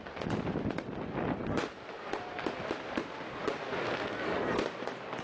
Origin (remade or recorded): recorded